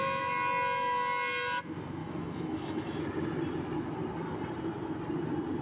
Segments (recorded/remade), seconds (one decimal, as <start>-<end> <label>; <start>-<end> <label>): 0.0-2.0 recorded; 2.0-3.0 remade; 3.0-5.6 recorded